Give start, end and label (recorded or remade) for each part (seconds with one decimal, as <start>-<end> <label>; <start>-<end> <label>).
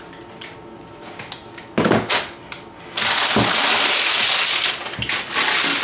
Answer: 0.0-5.8 recorded